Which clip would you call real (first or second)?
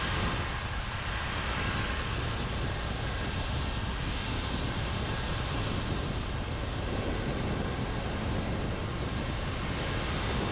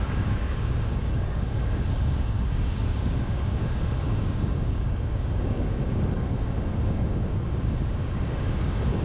first